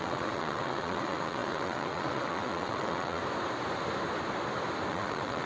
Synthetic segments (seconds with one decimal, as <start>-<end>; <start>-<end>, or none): 0.0-3.2; 4.9-5.5